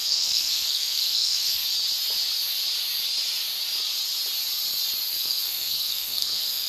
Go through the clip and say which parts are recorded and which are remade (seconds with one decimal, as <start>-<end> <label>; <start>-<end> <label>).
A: 0.0-1.6 remade; 1.6-5.1 recorded; 5.1-6.7 remade